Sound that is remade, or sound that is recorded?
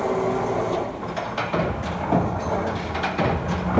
recorded